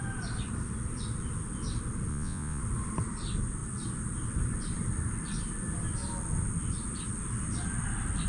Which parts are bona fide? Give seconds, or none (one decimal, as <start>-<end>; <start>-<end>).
0.0-2.1; 2.6-8.3